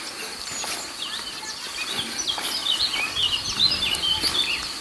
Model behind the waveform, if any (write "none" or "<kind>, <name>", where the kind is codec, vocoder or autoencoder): none